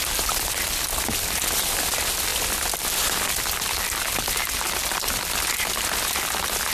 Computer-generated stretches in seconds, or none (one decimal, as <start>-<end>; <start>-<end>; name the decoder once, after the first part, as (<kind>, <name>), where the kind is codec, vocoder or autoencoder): none